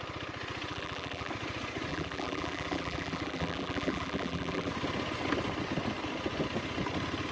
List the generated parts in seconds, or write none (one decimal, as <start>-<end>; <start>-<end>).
0.7-1.3; 1.9-4.7